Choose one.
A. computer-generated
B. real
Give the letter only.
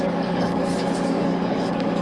A